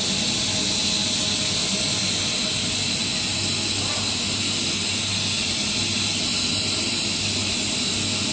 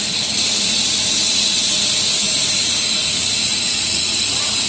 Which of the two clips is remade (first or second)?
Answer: second